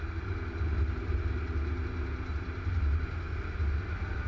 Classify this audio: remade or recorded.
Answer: recorded